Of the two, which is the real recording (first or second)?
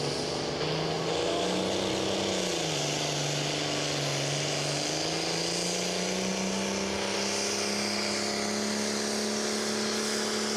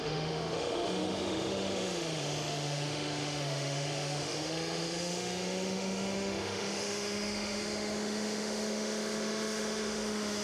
first